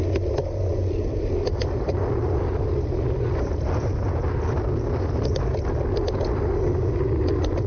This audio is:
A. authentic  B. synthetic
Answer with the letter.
A